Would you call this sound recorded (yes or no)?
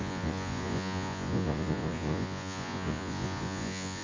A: no